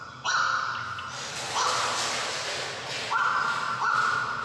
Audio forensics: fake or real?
real